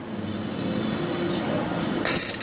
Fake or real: real